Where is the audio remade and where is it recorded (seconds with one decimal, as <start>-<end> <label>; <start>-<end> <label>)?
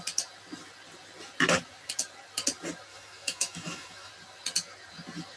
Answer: 0.0-2.9 recorded; 2.9-4.1 remade; 4.1-5.4 recorded